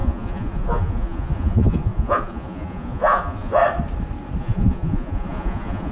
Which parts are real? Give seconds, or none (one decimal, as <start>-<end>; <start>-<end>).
3.6-4.4